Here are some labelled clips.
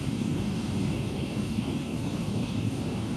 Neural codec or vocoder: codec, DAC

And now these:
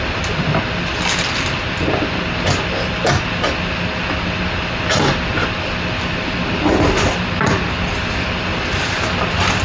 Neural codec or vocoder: none